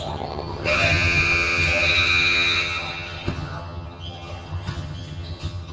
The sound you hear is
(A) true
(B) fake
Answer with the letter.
B